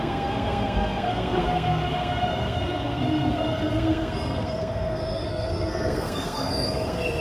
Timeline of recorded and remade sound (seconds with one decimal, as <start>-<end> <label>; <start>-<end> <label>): 0.0-7.2 remade